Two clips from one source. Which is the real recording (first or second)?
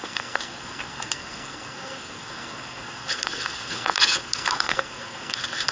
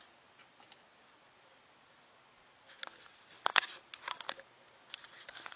second